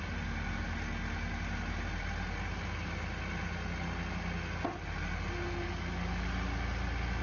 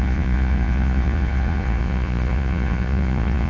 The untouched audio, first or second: first